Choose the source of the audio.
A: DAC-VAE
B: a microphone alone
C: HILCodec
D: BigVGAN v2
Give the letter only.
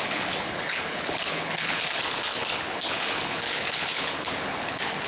C